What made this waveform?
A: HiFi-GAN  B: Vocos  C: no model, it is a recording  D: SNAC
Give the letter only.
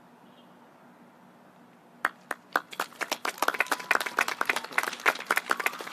C